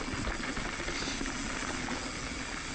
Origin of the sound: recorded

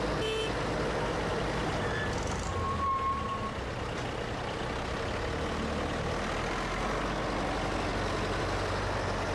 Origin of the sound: recorded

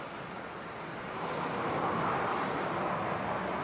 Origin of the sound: recorded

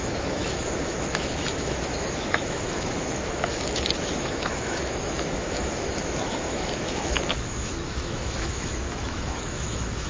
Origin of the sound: remade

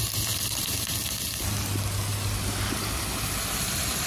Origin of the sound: recorded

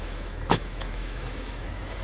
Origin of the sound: remade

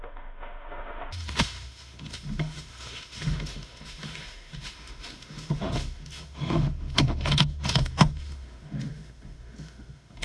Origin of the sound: remade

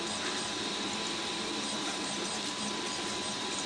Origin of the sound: recorded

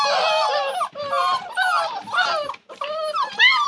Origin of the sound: recorded